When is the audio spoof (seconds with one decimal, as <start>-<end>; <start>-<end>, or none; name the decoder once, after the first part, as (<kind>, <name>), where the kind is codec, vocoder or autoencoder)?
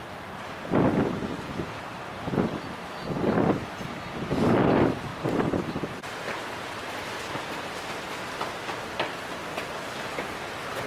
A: 1.2-2.8 (vocoder, BigVGAN v2); 5.1-7.9